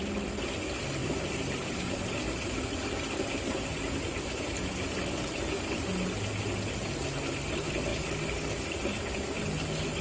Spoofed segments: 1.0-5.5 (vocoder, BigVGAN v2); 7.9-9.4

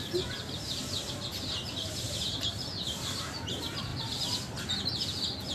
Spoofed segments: none

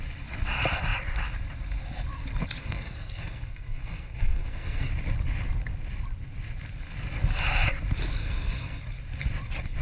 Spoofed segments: 2.6-4.9 (codec, SNAC); 8.2-8.8

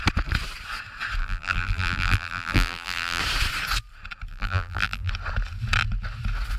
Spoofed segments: 1.2-3.2 (vocoder, BigVGAN v2); 4.3-5.1

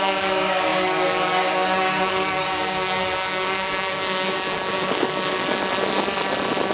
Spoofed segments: 0.0-5.6 (codec, DAC)

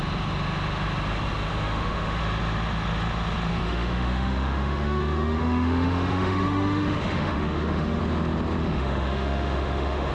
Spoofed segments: 1.5-2.2 (autoencoder, DAC-VAE); 3.5-8.0; 8.6-10.1

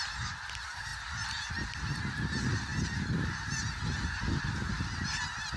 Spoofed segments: none

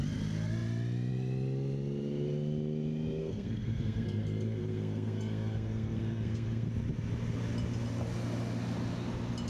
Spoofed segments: 3.2-6.7 (codec, SNAC)